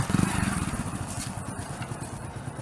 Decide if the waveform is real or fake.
fake